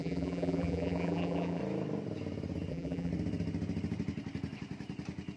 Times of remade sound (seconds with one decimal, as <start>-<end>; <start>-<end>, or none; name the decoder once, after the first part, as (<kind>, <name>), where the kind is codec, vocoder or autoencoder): 0.0-1.6 (vocoder, BigVGAN v2); 2.7-3.1

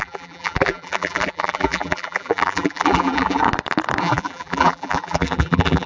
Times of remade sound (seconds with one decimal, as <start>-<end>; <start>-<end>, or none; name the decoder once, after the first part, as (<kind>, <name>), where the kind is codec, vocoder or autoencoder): 0.0-3.4 (vocoder, BigVGAN v2); 4.0-5.9

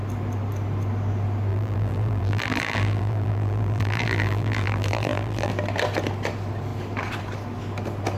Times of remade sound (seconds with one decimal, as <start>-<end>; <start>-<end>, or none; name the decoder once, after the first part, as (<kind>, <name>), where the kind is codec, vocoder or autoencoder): 1.5-5.5 (vocoder, BigVGAN v2)